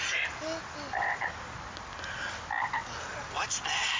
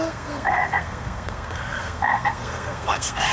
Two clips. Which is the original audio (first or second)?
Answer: first